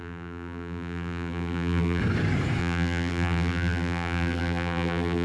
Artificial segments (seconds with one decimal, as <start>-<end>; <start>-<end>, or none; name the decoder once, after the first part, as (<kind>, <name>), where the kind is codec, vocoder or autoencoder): 0.0-2.0 (vocoder, BigVGAN v2); 2.6-5.2